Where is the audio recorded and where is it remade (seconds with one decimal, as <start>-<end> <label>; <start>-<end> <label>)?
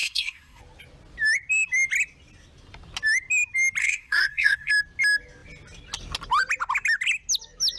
0.0-0.6 remade; 0.6-3.8 recorded; 3.8-4.7 remade; 4.7-7.8 recorded